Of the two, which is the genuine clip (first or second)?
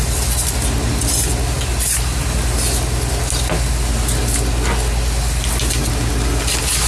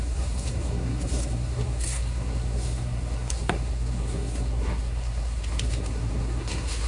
first